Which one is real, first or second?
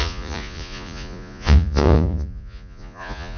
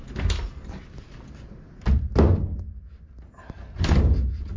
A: second